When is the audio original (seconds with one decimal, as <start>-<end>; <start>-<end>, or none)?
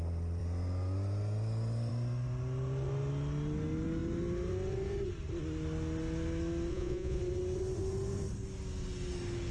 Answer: 0.0-6.7; 7.2-9.5